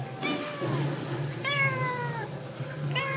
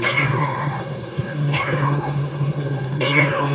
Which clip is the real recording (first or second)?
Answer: first